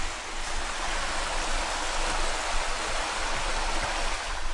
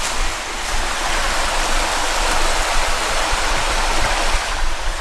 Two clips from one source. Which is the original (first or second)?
first